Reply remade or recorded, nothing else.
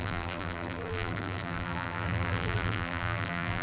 remade